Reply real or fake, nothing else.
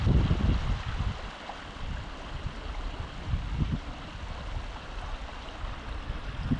real